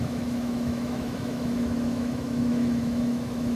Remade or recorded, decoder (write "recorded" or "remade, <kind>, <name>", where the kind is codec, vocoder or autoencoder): remade, autoencoder, DAC-VAE